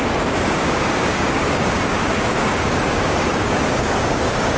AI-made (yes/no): yes